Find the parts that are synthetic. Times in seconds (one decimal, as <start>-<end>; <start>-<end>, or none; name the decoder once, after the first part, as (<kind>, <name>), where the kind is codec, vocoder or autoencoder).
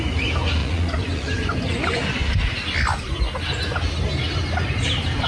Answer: 0.6-1.7 (vocoder, Vocos)